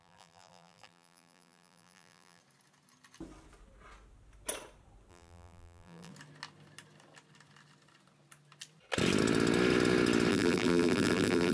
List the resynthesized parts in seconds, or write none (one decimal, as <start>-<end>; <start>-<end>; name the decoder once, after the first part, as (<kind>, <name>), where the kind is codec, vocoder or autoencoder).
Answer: 0.0-2.4 (vocoder, BigVGAN v2); 5.1-6.1; 10.3-11.5